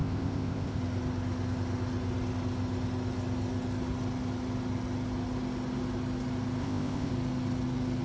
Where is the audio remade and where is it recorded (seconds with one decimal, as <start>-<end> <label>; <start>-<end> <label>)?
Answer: 0.0-0.8 remade; 0.8-6.6 recorded; 6.6-7.1 remade; 7.1-8.0 recorded

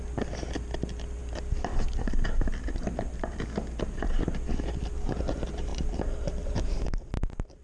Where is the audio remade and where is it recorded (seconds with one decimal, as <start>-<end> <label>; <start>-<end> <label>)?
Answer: 0.0-5.7 recorded; 5.7-7.6 remade

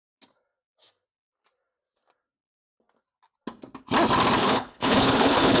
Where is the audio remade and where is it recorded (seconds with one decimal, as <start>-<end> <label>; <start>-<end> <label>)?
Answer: 0.0-4.4 recorded; 4.4-5.6 remade

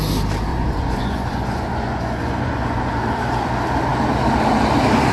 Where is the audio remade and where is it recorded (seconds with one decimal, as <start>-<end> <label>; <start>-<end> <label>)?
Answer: 0.0-0.5 recorded; 0.5-3.0 remade; 3.0-5.1 recorded

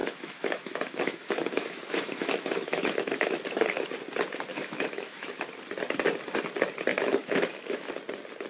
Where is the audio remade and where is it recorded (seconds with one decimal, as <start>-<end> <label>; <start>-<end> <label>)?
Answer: 0.0-3.4 remade; 3.4-4.5 recorded; 4.5-5.5 remade; 5.5-6.9 recorded; 6.9-7.9 remade; 7.9-8.5 recorded

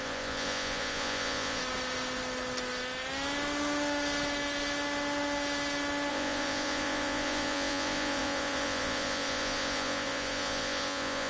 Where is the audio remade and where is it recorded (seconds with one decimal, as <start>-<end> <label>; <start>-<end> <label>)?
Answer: 0.0-1.6 remade; 1.6-6.1 recorded; 6.1-11.3 remade

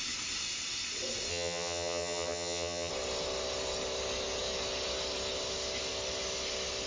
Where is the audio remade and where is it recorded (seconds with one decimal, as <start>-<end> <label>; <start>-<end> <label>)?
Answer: 0.0-1.3 recorded; 1.3-2.9 remade; 2.9-6.9 recorded

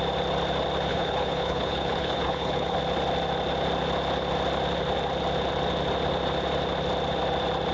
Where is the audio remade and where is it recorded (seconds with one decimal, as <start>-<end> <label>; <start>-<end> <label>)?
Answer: 0.0-0.9 recorded; 0.9-2.8 remade; 2.8-7.7 recorded